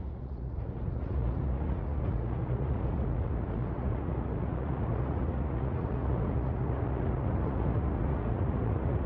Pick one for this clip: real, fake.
fake